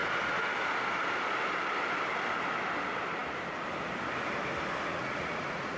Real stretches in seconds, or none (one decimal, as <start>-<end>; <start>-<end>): 0.0-4.9

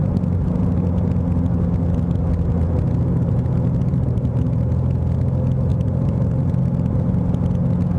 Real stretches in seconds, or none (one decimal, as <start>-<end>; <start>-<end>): 0.0-3.9; 4.7-5.7; 7.1-8.0

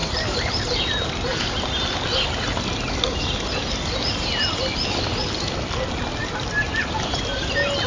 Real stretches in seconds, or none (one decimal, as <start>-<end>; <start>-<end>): 0.6-6.8; 7.5-7.9